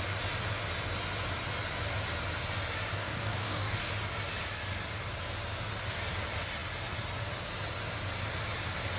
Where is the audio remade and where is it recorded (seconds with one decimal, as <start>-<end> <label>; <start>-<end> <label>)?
0.0-3.0 recorded; 3.0-3.9 remade; 3.9-9.0 recorded